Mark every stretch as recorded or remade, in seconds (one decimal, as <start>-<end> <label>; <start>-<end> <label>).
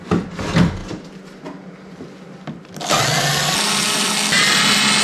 0.0-5.0 recorded